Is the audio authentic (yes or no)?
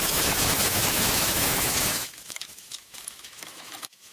no